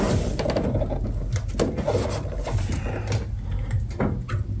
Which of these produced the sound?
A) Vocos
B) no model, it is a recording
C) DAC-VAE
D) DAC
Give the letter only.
B